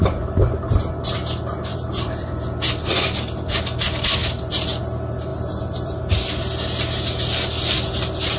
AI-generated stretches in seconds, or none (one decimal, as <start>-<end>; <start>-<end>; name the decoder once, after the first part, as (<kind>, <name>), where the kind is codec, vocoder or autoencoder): 1.7-3.6 (vocoder, BigVGAN v2); 4.2-4.8; 5.3-6.0